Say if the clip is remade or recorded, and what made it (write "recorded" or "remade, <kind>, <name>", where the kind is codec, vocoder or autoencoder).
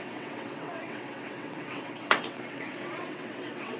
remade, vocoder, WaveNeXt